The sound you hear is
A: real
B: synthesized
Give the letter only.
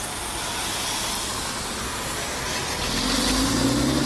A